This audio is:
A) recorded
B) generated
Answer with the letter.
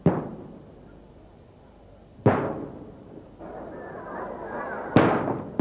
A